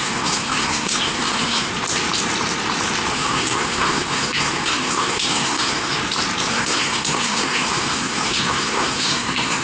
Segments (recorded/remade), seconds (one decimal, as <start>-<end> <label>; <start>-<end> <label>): 0.0-1.7 remade; 1.7-3.1 recorded; 3.1-6.0 remade; 6.0-6.5 recorded; 6.5-9.6 remade